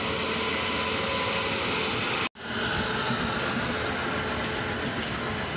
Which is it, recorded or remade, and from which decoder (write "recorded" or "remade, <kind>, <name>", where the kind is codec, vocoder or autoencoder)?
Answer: recorded